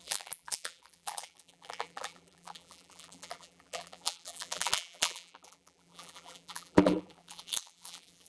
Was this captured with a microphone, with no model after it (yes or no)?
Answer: no